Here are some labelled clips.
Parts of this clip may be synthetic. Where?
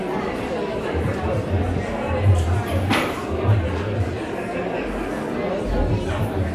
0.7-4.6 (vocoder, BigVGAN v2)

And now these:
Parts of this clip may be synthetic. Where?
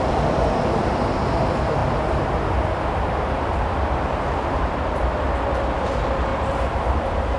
6.3-7.4 (vocoder, BigVGAN v2)